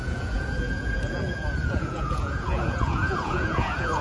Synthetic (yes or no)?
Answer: yes